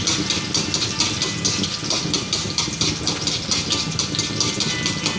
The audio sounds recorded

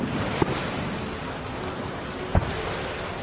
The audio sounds recorded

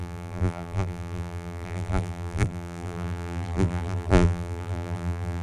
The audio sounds remade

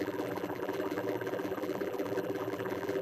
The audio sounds remade